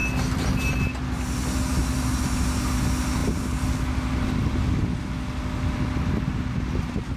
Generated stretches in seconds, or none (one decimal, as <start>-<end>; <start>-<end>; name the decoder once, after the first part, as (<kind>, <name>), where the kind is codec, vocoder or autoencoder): none